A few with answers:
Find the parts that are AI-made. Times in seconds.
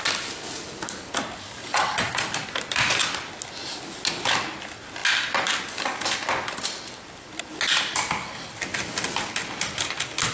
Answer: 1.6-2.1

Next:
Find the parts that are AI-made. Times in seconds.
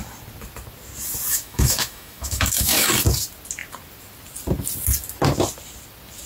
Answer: 1.3-2.9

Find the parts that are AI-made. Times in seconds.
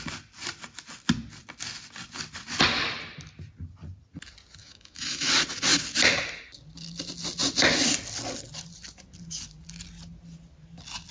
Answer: 4.6-5.3